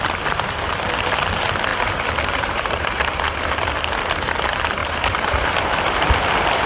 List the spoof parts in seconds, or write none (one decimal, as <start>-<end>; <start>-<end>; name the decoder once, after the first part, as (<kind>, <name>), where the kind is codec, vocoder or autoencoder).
1.7-3.2 (vocoder, BigVGAN v2); 4.8-5.6